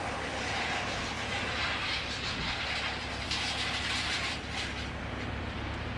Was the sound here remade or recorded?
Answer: remade